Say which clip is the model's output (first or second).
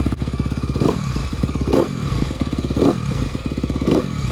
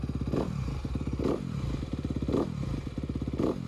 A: first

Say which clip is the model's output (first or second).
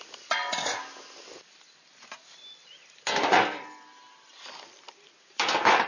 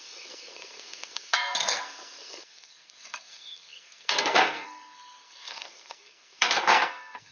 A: second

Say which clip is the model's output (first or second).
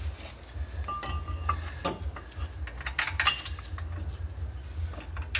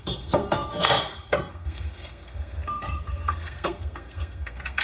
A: second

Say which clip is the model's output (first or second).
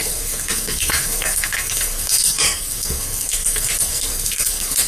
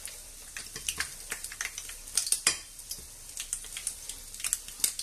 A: first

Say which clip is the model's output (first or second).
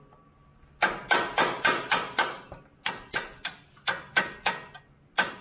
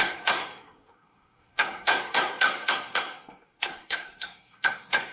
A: second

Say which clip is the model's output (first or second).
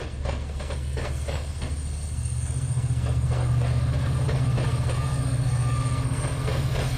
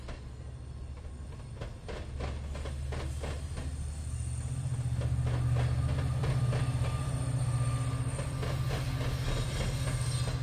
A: first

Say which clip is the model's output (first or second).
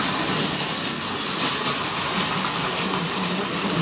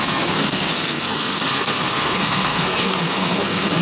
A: second